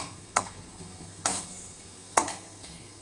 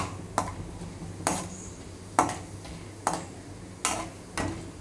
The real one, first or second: second